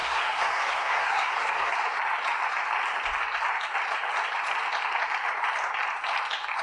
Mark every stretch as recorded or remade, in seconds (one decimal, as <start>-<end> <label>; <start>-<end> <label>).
0.0-1.7 remade; 1.7-6.6 recorded